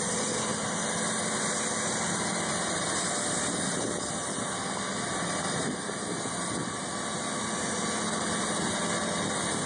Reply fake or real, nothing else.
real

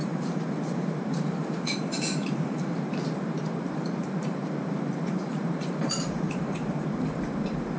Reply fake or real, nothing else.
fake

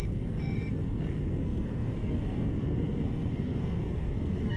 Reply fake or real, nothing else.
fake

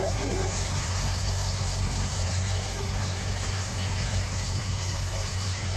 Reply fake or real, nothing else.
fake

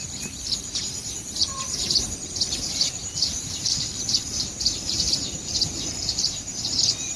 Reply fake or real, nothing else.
fake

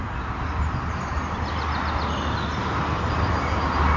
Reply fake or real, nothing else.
real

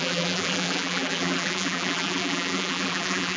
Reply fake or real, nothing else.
fake